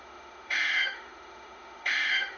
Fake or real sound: fake